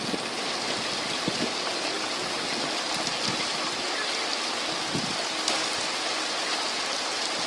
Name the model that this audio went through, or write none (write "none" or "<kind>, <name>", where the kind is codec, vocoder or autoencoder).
none